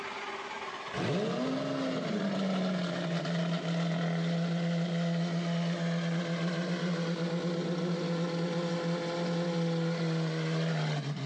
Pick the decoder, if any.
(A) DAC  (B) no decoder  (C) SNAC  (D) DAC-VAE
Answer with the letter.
B